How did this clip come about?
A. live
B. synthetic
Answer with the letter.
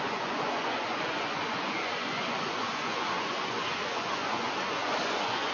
B